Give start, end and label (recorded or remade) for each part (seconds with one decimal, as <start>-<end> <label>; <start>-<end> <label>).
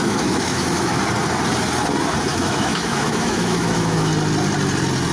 0.0-1.0 remade; 1.0-2.3 recorded; 2.3-4.1 remade; 4.1-5.1 recorded